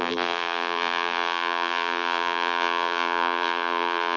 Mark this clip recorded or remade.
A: remade